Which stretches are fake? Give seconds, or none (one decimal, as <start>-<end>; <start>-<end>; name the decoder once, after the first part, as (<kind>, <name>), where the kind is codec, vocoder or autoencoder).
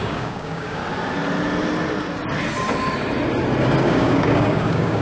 0.0-0.8 (codec, DAC); 3.8-5.0